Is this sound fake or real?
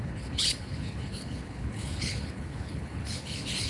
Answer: fake